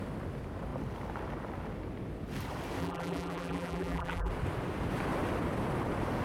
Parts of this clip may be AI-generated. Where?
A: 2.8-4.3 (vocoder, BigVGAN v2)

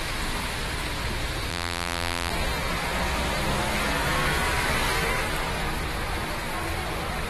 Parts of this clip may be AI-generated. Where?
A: 1.5-2.3 (vocoder, BigVGAN v2)